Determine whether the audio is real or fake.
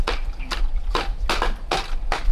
real